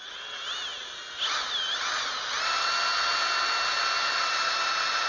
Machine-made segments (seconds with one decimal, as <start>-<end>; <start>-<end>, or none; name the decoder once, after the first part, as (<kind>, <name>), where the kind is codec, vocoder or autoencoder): none